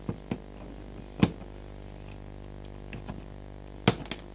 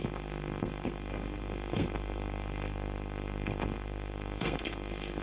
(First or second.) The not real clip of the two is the second